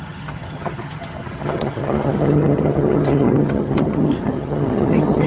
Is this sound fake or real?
fake